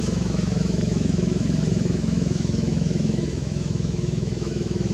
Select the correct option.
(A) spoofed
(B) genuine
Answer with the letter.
A